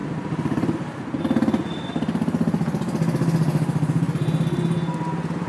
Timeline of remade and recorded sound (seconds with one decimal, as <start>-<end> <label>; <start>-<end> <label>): 0.0-1.2 remade; 1.2-5.5 recorded